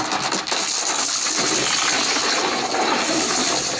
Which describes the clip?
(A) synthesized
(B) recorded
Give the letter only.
B